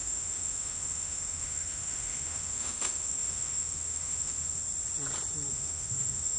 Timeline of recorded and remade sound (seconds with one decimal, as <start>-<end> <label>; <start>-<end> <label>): 0.0-4.6 remade; 4.6-5.5 recorded; 5.5-6.4 remade